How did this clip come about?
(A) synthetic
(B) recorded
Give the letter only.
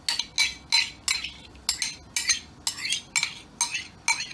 B